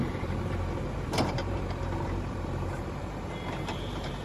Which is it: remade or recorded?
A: remade